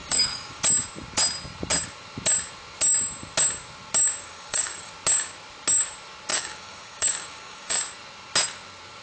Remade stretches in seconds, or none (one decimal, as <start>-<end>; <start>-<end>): 0.0-0.6; 4.2-4.9; 6.3-7.8